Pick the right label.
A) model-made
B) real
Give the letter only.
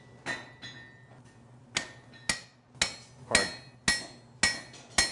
B